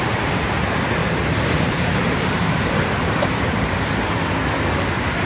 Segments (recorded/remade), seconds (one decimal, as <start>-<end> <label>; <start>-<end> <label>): 0.0-1.0 recorded; 1.0-4.2 remade; 4.2-5.3 recorded